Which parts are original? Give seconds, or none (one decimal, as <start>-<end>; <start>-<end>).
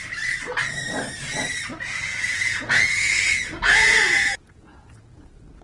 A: 0.0-2.1